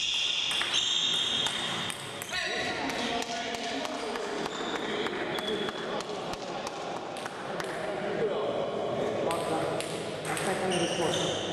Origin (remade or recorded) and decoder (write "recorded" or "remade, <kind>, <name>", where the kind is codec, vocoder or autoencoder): recorded